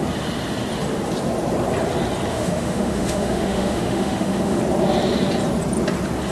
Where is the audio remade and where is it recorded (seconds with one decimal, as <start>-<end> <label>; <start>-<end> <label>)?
0.0-2.3 recorded; 2.3-4.6 remade; 4.6-6.3 recorded